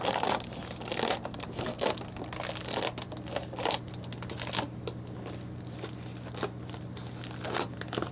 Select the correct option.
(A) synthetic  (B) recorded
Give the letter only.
B